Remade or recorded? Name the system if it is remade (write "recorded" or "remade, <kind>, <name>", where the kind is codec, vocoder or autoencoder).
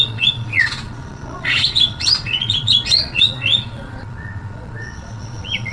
remade, vocoder, Vocos